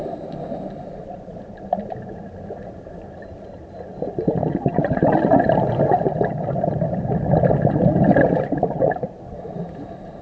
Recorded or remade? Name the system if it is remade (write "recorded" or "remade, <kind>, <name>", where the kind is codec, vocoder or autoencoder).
remade, vocoder, BigVGAN v2